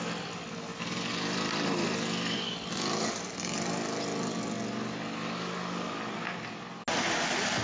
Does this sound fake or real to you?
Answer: real